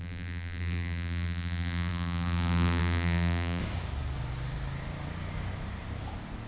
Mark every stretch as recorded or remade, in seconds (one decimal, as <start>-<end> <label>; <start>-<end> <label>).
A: 0.0-3.6 remade; 3.6-6.5 recorded